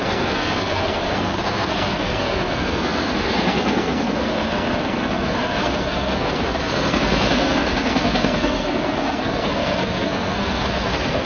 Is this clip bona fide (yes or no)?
no